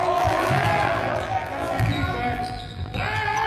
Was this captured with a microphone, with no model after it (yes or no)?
no